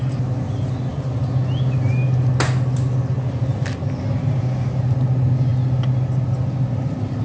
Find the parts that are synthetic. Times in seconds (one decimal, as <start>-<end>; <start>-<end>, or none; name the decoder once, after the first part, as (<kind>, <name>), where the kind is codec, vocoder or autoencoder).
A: none